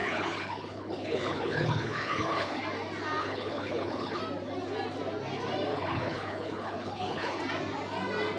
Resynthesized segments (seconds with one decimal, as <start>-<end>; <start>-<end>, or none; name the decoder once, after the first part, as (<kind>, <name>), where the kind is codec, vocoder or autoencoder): 0.0-2.6 (codec, HILCodec); 3.2-4.2; 5.7-7.4